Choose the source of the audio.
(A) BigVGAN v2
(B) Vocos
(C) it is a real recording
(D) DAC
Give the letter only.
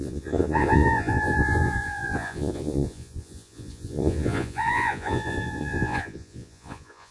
B